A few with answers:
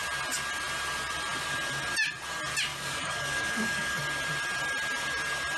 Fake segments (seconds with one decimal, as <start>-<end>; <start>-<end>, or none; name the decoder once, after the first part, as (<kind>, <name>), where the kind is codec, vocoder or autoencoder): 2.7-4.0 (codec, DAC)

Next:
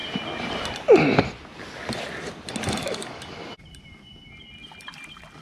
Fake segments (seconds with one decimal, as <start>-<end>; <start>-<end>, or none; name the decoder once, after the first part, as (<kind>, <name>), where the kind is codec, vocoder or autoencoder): 2.8-3.3 (codec, DAC)

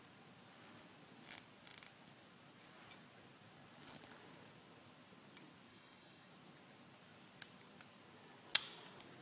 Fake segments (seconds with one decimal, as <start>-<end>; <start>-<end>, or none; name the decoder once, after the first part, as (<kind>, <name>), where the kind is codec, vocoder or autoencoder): 5.7-6.3 (codec, DAC)

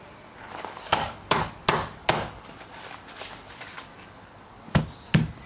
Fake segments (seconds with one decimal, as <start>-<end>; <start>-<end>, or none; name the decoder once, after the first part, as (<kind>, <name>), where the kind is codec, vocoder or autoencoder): 0.4-1.5 (codec, DAC); 2.0-4.8

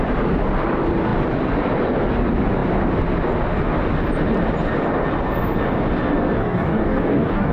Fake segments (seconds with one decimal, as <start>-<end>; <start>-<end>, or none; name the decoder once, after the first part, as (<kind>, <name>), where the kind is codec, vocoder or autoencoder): 6.4-7.5 (codec, DAC)

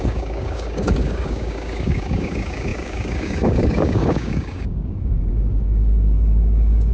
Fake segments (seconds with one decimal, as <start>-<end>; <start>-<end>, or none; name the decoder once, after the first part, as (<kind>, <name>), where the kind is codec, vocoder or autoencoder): 0.0-6.9 (codec, DAC)

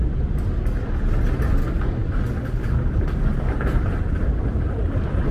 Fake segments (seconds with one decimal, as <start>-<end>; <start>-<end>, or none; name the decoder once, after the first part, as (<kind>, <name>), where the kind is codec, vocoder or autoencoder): 1.6-2.1 (codec, DAC); 2.6-3.5